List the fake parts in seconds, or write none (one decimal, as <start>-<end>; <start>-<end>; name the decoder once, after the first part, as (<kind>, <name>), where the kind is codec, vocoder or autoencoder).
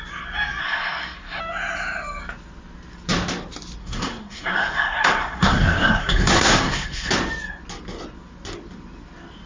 0.6-1.4 (codec, SNAC); 3.8-7.1